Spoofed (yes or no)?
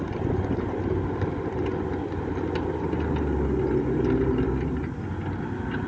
no